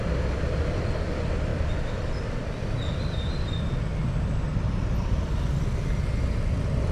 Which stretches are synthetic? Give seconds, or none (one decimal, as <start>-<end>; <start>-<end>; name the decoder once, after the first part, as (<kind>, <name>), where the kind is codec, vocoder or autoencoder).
1.5-2.8 (vocoder, BigVGAN v2)